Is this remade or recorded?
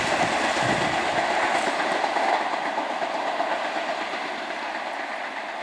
recorded